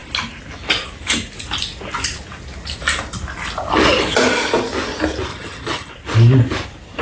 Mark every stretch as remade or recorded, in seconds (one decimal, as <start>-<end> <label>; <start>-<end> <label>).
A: 0.0-5.3 recorded; 5.3-5.9 remade; 5.9-7.0 recorded